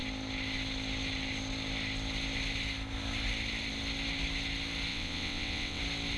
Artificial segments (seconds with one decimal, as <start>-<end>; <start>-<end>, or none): 4.9-5.8